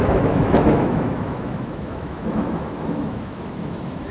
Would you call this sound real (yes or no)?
no